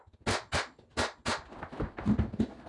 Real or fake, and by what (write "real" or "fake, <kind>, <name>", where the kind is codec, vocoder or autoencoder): real